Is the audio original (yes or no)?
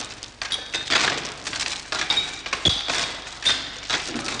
yes